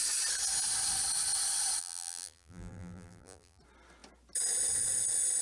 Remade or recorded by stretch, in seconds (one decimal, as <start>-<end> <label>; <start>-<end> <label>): 0.0-1.8 recorded; 1.8-3.6 remade; 3.6-5.4 recorded

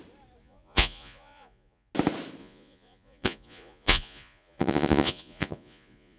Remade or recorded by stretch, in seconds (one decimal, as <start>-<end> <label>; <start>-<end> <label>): 0.0-0.4 recorded; 0.4-1.9 remade; 1.9-2.4 recorded; 2.4-6.2 remade

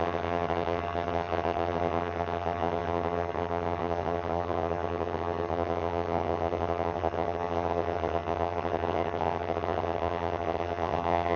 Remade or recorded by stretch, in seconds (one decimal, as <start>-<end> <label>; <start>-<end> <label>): 0.0-11.4 remade

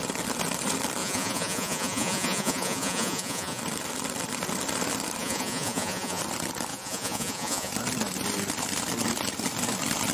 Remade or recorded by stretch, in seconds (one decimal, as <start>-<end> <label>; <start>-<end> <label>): 0.0-1.0 recorded; 1.0-3.6 remade; 3.6-5.2 recorded; 5.2-6.2 remade; 6.2-6.7 recorded; 6.7-7.7 remade; 7.7-10.1 recorded

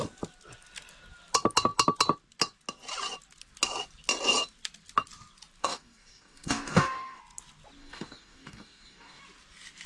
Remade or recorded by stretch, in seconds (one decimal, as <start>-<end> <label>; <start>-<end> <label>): 0.0-5.6 recorded; 5.6-7.2 remade; 7.2-7.8 recorded; 7.8-9.2 remade; 9.2-9.9 recorded